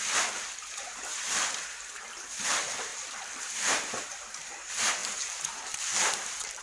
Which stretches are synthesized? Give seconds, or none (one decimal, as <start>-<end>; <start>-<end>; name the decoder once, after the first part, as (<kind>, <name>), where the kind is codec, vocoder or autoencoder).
0.0-6.6 (vocoder, BigVGAN v2)

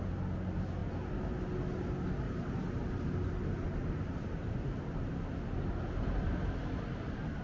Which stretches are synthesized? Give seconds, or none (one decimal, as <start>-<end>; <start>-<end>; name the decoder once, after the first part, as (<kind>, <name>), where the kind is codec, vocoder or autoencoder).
none

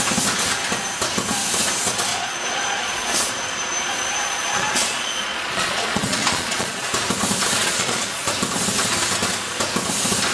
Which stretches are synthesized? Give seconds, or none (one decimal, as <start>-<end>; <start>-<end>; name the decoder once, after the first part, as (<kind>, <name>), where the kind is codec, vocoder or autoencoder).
2.1-3.3 (vocoder, Vocos); 4.2-6.9; 7.6-8.3

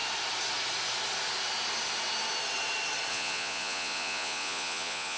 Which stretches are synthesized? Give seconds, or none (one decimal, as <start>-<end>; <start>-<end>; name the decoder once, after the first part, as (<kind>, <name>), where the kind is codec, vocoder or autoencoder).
3.1-5.2 (vocoder, Vocos)